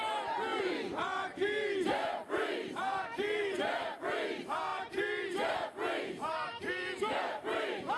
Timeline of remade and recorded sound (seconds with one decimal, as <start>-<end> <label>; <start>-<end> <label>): 0.0-8.0 remade